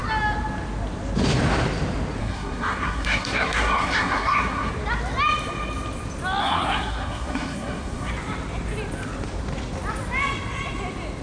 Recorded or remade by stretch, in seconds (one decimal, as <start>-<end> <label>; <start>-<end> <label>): 0.0-2.2 recorded; 2.2-4.7 remade; 4.7-6.4 recorded; 6.4-8.1 remade; 8.1-11.2 recorded